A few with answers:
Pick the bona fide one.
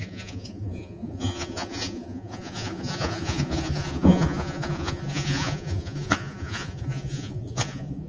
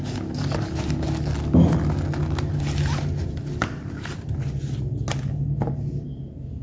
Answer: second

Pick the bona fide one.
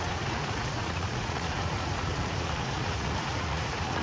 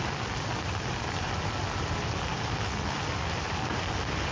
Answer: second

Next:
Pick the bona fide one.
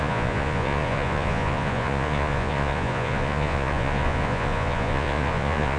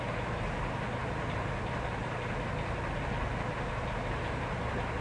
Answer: second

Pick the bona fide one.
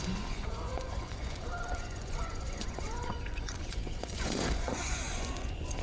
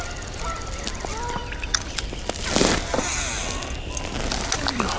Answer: second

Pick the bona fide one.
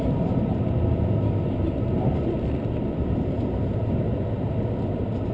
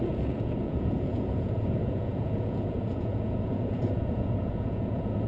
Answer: first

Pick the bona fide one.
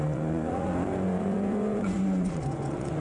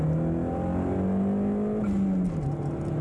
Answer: second